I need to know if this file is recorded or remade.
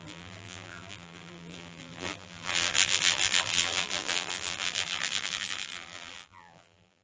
remade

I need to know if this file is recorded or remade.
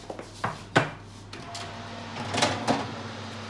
recorded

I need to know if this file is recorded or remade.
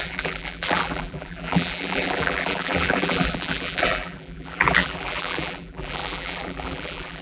remade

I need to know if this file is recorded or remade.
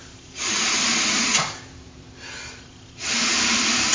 remade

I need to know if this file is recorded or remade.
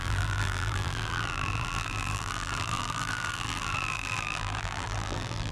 remade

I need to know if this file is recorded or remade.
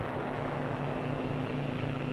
remade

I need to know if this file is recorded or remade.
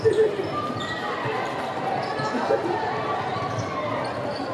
recorded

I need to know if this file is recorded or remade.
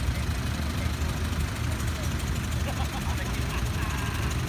recorded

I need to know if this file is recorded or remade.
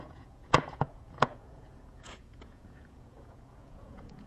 remade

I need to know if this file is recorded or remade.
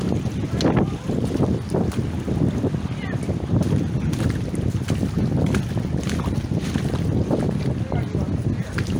recorded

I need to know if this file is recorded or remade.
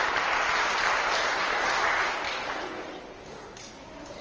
recorded